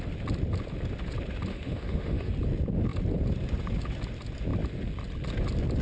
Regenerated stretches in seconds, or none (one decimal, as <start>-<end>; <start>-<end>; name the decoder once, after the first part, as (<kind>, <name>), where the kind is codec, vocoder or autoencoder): 1.5-2.3 (autoencoder, DAC-VAE)